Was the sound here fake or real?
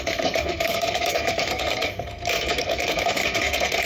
fake